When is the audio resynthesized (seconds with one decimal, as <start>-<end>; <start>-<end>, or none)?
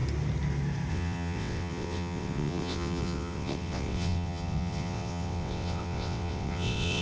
0.9-7.0